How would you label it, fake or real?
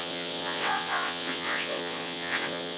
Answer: fake